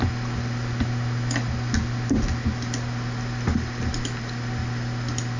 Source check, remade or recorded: recorded